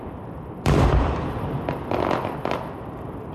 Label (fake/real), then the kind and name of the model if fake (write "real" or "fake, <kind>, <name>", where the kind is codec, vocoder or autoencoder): fake, vocoder, BigVGAN v2